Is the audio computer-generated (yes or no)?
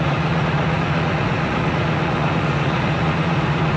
yes